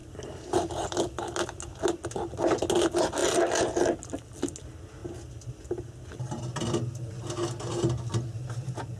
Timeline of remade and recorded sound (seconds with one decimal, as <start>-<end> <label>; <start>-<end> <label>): 0.0-9.0 recorded